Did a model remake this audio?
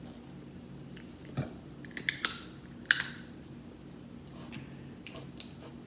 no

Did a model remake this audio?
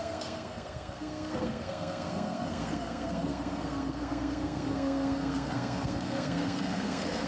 yes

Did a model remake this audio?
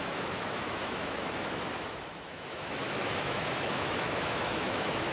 yes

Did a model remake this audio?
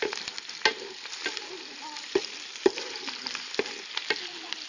no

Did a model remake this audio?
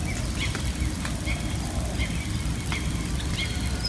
no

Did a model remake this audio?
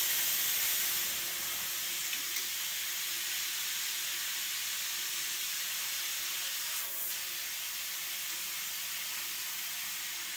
no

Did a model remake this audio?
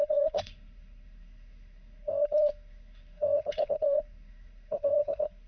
yes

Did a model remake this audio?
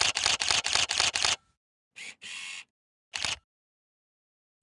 no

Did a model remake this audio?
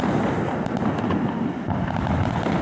no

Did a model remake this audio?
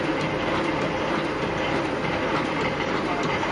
no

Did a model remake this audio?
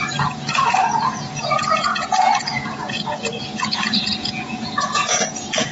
yes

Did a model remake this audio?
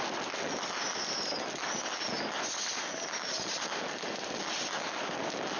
no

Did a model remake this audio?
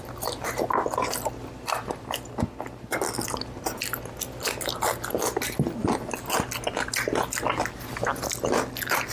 no